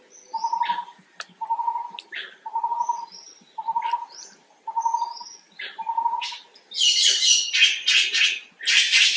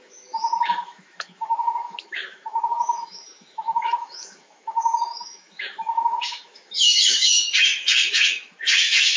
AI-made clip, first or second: second